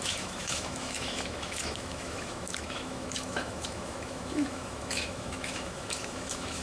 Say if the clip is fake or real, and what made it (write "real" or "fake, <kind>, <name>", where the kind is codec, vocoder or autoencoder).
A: fake, autoencoder, DAC-VAE